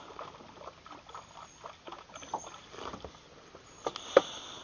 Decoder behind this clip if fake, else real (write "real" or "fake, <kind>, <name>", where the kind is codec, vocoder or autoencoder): real